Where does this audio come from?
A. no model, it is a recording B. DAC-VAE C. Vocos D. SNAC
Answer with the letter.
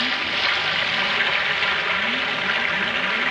A